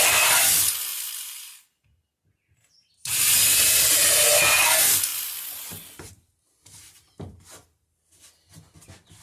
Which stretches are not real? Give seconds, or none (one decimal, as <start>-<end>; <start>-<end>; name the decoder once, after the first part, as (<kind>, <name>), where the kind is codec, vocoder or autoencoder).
0.9-1.5 (vocoder, BigVGAN v2); 5.1-6.1